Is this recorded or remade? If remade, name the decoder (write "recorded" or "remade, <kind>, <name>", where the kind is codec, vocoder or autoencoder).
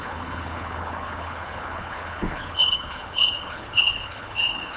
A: remade, codec, HILCodec